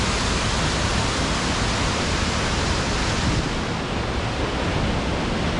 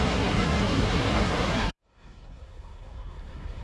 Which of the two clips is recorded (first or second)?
first